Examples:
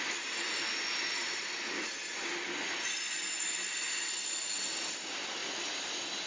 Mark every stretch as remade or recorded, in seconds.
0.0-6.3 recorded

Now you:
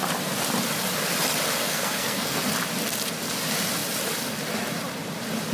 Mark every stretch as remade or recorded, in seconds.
0.0-1.6 recorded; 1.6-2.4 remade; 2.4-5.5 recorded